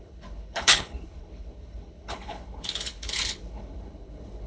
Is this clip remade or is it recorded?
remade